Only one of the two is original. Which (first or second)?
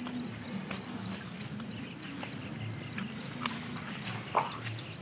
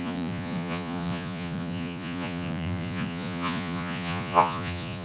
first